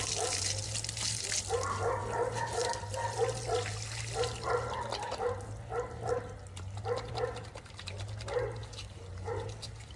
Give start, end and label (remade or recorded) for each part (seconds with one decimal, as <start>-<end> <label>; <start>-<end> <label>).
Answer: 0.0-10.0 recorded